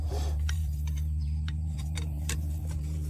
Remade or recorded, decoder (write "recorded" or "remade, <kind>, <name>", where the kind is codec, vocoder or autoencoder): remade, vocoder, BigVGAN v2